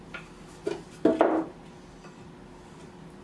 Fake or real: real